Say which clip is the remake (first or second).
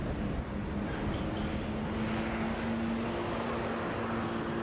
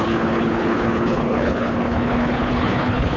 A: second